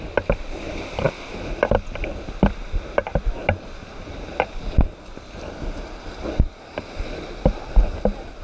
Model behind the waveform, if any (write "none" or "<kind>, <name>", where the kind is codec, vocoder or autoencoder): none